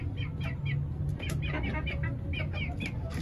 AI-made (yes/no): no